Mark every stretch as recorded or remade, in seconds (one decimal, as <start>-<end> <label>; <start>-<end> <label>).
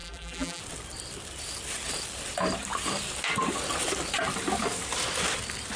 0.0-0.6 remade; 0.6-5.8 recorded